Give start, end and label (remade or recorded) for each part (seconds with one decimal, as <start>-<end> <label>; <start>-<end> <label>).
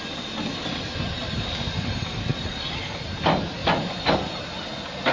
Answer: 0.0-1.1 recorded; 1.1-2.5 remade; 2.5-3.6 recorded; 3.6-4.4 remade; 4.4-5.1 recorded